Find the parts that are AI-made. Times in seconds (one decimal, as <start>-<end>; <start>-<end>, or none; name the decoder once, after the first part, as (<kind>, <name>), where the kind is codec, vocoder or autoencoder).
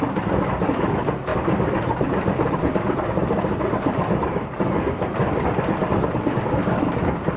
1.3-2.7 (vocoder, BigVGAN v2); 5.8-6.8